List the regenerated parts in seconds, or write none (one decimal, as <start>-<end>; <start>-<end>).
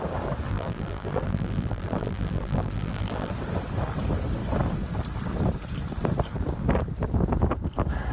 0.5-3.3